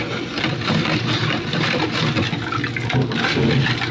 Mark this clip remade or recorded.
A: recorded